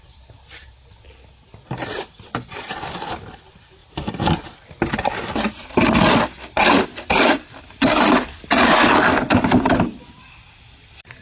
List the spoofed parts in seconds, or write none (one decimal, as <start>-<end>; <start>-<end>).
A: none